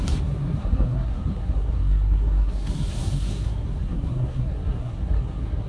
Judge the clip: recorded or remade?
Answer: remade